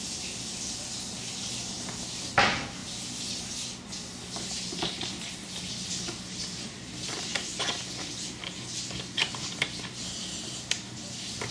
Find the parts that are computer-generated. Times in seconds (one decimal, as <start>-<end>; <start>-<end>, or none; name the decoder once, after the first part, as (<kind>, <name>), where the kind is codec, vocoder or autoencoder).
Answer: none